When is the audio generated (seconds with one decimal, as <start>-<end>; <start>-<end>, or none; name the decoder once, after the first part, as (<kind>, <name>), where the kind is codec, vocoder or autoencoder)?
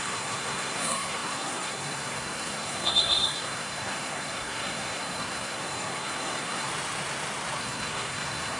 0.0-6.7 (codec, SNAC); 7.6-8.6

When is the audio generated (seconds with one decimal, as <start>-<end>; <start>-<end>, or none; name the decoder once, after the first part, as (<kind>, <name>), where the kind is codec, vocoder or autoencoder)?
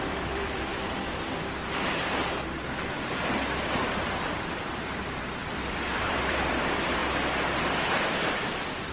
0.0-0.7 (vocoder, BigVGAN v2); 2.9-7.0; 7.9-8.9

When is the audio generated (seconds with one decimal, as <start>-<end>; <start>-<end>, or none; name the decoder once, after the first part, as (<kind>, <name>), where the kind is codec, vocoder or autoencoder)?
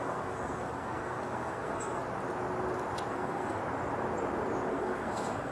0.0-2.0 (codec, SNAC); 3.1-3.6; 4.7-5.5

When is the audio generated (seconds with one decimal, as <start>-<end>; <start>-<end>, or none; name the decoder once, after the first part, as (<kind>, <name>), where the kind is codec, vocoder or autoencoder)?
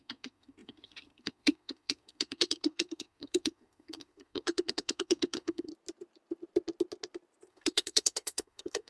0.0-5.7 (codec, SNAC); 7.5-8.9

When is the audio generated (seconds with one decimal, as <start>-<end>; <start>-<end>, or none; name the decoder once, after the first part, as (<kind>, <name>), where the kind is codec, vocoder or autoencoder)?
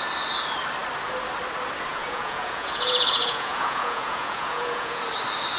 1.9-5.0 (vocoder, Vocos)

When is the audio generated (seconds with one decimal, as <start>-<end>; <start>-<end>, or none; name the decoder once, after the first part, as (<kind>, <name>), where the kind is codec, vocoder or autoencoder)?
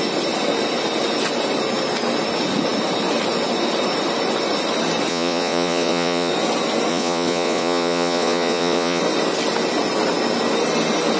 5.1-6.3 (vocoder, Vocos); 6.9-9.0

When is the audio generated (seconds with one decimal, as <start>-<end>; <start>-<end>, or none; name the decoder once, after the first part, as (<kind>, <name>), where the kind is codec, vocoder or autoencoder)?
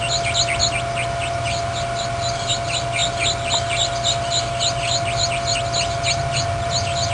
none